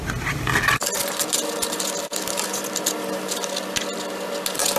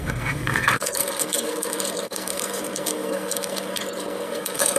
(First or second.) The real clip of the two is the first